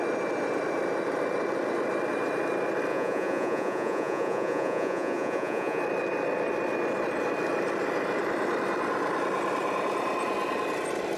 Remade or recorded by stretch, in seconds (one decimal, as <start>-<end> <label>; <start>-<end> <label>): 0.0-2.9 recorded; 2.9-5.8 remade; 5.8-11.2 recorded